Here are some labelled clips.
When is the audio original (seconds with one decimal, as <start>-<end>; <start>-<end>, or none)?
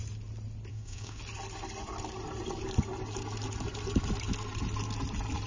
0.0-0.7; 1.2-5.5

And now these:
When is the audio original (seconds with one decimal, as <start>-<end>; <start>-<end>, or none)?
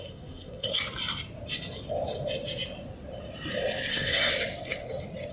0.7-3.9; 4.3-5.3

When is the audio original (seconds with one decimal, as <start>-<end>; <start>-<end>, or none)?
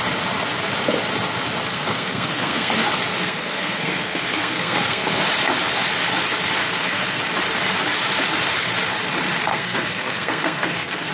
0.0-1.7; 2.7-3.1; 5.2-6.6; 7.2-9.5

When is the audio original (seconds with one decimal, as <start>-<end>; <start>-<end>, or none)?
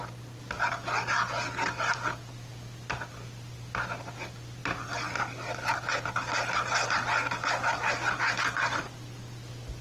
0.0-9.8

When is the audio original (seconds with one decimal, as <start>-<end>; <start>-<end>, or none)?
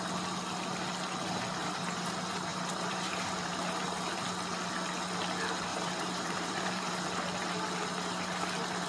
0.0-1.6; 2.1-2.5; 3.5-5.7; 6.9-8.9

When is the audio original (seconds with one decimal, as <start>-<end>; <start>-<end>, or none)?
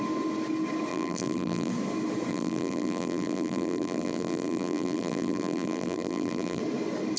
0.0-0.9; 1.7-2.3; 6.6-7.2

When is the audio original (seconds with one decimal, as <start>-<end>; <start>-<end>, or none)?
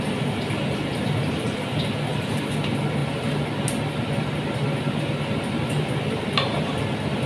0.0-7.3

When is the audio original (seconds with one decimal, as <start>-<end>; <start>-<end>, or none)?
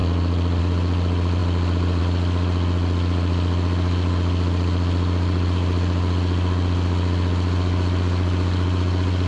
0.0-9.3